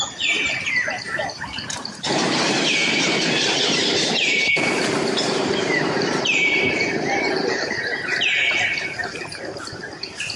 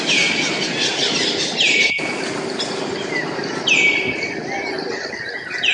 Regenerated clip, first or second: first